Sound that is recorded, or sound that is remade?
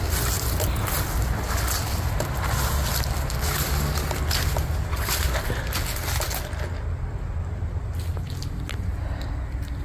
recorded